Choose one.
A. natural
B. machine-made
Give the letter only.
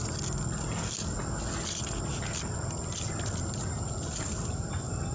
A